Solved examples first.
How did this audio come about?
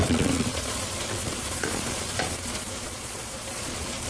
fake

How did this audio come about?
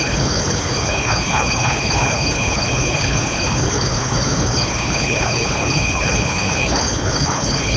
fake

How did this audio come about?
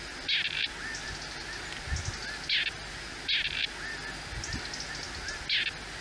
real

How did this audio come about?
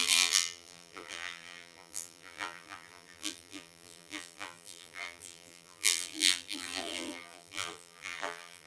fake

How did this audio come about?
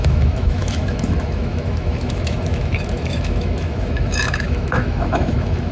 fake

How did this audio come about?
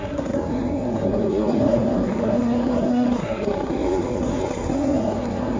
fake